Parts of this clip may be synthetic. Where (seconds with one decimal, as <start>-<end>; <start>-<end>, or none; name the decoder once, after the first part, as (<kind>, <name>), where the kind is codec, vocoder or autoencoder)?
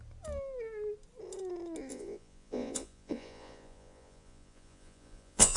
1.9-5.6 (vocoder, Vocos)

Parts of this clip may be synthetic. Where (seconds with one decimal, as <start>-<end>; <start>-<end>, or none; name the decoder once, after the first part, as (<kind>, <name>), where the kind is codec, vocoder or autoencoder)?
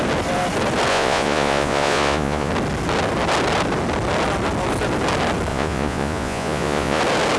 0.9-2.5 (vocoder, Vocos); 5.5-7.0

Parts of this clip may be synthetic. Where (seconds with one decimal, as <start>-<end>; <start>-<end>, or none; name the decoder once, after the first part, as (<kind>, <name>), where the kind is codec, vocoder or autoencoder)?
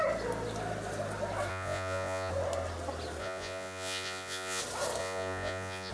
1.5-2.3 (vocoder, Vocos); 3.2-4.6; 5.0-5.9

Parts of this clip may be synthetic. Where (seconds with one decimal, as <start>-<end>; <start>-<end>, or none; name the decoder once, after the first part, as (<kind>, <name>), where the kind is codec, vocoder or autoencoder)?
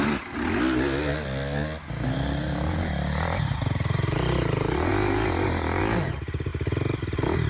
none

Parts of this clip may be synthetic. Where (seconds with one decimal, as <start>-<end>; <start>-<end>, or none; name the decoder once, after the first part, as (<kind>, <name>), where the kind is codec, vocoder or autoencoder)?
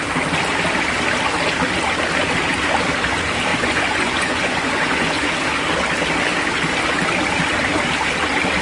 3.5-5.3 (vocoder, Vocos)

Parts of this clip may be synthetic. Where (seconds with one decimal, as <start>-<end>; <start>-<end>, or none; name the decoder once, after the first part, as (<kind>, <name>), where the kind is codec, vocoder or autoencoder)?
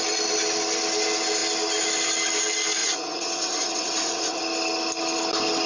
2.8-4.4 (vocoder, Vocos)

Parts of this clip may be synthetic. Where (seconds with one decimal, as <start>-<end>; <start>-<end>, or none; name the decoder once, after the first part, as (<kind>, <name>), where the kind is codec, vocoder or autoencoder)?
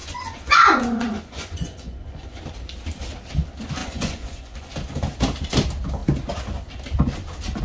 0.0-2.4 (vocoder, Vocos); 3.8-4.7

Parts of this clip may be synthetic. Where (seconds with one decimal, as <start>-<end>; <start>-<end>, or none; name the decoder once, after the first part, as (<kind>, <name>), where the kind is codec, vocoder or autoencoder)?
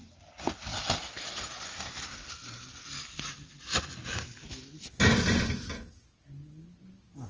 none